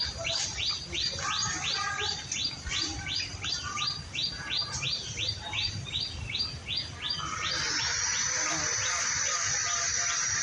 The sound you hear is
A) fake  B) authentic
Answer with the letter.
B